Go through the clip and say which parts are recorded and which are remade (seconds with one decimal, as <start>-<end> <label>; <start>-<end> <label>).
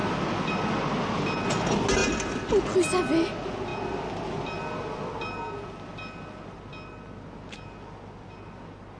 0.0-9.0 recorded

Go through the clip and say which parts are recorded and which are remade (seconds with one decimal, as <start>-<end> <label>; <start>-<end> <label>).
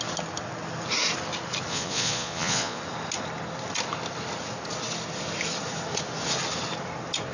0.0-1.7 recorded; 1.7-2.8 remade; 2.8-7.3 recorded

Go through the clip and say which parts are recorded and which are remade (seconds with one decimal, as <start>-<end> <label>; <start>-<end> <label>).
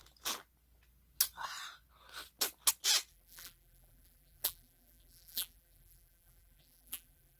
0.0-3.1 recorded; 3.1-7.4 remade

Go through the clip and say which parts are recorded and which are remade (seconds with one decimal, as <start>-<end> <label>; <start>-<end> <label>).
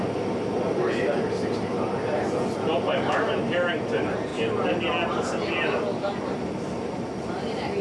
0.0-7.8 recorded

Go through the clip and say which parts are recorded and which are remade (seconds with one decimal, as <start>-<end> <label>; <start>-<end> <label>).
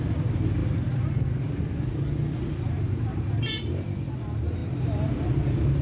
0.0-5.8 recorded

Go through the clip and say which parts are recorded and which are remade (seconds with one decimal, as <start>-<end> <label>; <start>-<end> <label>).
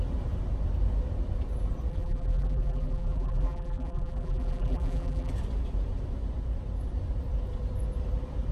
0.0-1.9 recorded; 1.9-5.3 remade; 5.3-8.5 recorded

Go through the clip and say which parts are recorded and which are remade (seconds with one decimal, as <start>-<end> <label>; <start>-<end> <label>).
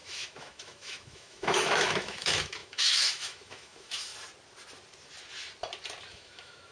0.0-4.1 remade; 4.1-6.1 recorded; 6.1-6.7 remade